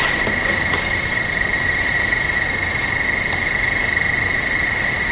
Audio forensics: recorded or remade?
recorded